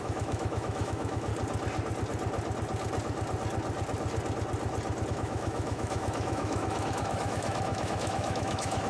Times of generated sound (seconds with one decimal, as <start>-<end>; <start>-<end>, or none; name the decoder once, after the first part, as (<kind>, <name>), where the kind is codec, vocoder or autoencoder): 0.0-1.3 (autoencoder, DAC-VAE); 5.1-8.9